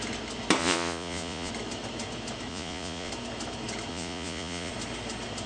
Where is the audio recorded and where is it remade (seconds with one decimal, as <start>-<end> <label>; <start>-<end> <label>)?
0.0-0.6 recorded; 0.6-1.5 remade; 1.5-2.5 recorded; 2.5-3.1 remade; 3.1-3.9 recorded; 3.9-4.7 remade; 4.7-5.5 recorded

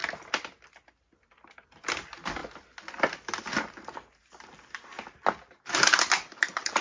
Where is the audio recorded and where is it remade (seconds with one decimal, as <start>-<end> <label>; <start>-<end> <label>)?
0.0-6.8 recorded

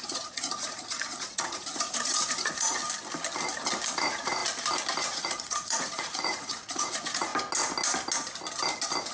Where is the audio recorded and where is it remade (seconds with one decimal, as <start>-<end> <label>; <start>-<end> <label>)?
0.0-2.8 remade; 2.8-4.0 recorded; 4.0-4.4 remade; 4.4-5.0 recorded; 5.0-7.3 remade; 7.3-9.1 recorded

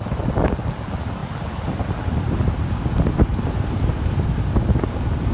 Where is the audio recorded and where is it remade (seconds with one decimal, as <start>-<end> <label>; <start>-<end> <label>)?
0.0-5.3 recorded

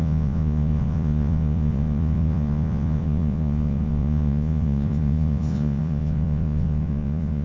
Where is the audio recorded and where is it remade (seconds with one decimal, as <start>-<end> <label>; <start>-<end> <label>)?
0.0-7.4 remade

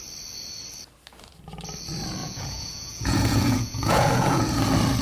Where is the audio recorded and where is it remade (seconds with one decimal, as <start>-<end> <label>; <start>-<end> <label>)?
0.0-2.2 recorded; 2.2-4.5 remade; 4.5-5.0 recorded

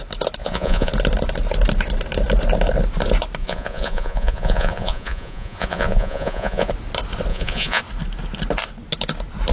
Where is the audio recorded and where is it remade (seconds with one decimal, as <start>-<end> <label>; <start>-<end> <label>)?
0.0-0.4 recorded; 0.4-0.9 remade; 0.9-3.4 recorded; 3.4-6.7 remade; 6.7-7.3 recorded; 7.3-7.8 remade; 7.8-9.5 recorded

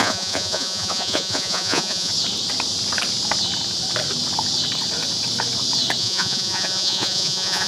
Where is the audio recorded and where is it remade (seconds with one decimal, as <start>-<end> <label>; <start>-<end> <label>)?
0.0-2.1 remade; 2.1-6.0 recorded; 6.0-7.7 remade